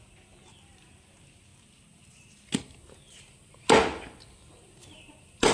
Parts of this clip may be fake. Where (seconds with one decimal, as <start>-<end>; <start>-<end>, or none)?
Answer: none